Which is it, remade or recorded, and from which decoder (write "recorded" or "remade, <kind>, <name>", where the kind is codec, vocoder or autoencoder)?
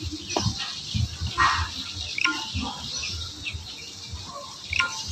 recorded